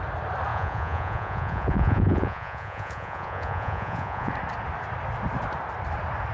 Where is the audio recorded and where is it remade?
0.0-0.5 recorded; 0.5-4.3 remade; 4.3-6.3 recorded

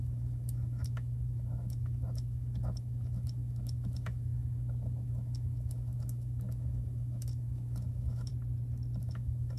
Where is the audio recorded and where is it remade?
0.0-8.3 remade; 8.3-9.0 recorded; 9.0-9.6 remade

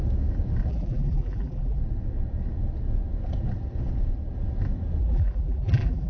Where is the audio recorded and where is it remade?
0.0-0.7 recorded; 0.7-1.8 remade; 1.8-5.0 recorded; 5.0-6.1 remade

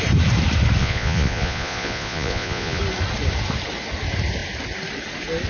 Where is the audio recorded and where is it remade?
0.0-0.8 recorded; 0.8-2.8 remade; 2.8-5.5 recorded

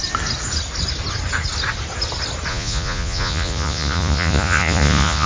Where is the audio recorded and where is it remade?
0.0-2.5 recorded; 2.5-5.3 remade

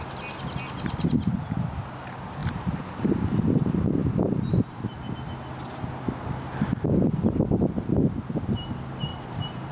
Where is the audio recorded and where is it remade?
0.0-2.4 recorded; 2.4-3.6 remade; 3.6-4.0 recorded; 4.0-5.1 remade; 5.1-9.1 recorded; 9.1-9.7 remade